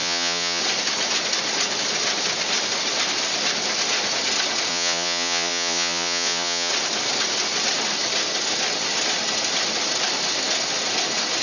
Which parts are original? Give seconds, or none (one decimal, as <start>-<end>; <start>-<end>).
0.6-4.7; 6.7-11.4